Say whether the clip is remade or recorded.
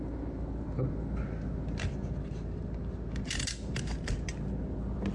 recorded